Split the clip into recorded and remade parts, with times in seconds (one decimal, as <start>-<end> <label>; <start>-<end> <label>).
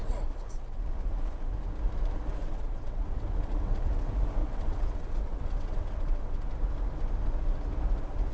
0.0-0.8 remade; 0.8-2.4 recorded; 2.4-3.9 remade; 3.9-4.4 recorded; 4.4-6.5 remade; 6.5-8.3 recorded